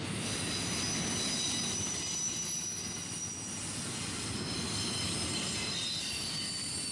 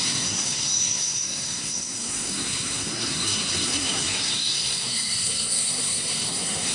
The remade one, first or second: second